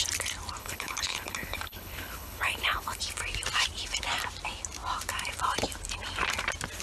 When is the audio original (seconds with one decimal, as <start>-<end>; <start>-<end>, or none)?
0.0-0.6; 3.0-6.8

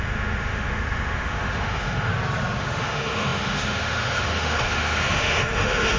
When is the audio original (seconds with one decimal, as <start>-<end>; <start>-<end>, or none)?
2.1-2.6

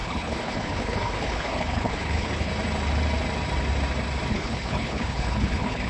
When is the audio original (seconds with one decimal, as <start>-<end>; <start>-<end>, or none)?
2.5-4.3

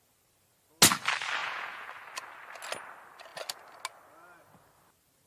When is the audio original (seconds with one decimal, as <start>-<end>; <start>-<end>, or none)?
0.0-1.4; 1.9-5.3

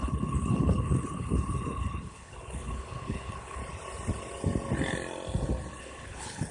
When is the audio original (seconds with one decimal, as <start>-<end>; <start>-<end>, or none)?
3.6-5.8

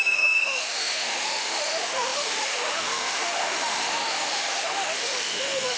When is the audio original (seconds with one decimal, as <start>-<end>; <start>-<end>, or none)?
none